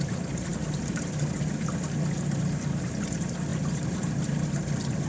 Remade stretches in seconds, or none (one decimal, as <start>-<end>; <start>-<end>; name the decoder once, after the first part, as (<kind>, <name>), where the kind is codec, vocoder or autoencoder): none